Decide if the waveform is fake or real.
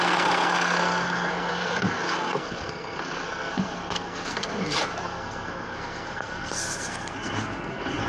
fake